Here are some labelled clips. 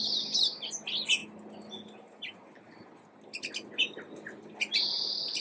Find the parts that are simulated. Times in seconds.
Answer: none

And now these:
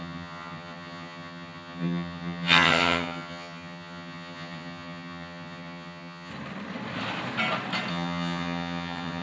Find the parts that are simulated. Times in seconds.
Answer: 0.0-6.3 (vocoder, HiFi-GAN); 7.9-9.2

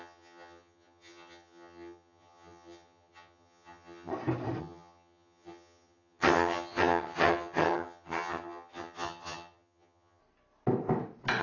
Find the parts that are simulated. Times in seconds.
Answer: 0.0-4.1 (vocoder, HiFi-GAN); 4.6-10.2